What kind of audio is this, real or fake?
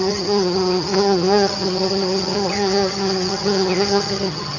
fake